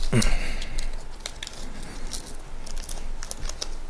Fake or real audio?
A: real